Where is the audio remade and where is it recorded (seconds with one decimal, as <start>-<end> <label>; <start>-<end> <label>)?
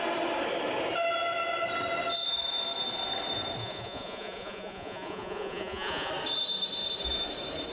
0.0-3.6 recorded; 3.6-6.1 remade; 6.1-7.7 recorded